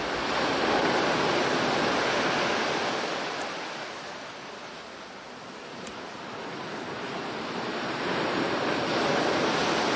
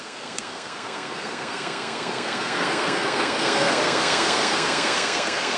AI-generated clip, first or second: second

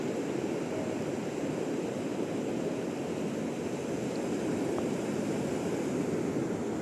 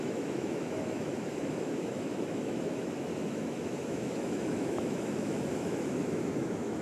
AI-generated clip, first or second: second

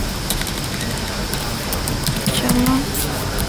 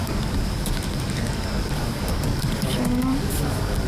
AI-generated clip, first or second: second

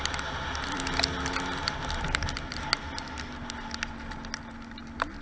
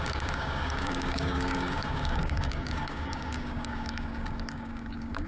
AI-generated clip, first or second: second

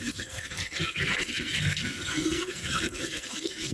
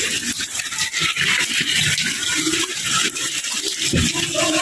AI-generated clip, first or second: first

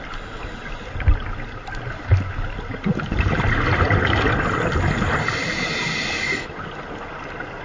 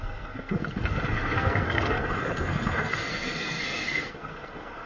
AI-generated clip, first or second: second